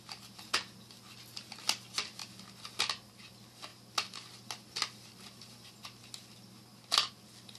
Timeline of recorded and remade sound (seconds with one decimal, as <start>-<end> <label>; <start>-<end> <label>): 0.0-7.6 recorded